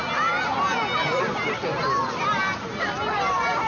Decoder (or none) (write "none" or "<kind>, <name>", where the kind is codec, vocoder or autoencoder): none